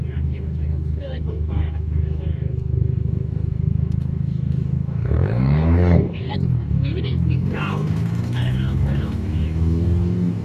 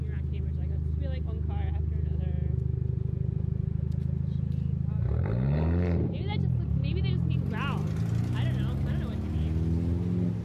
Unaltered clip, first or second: second